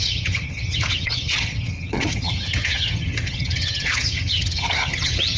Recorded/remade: remade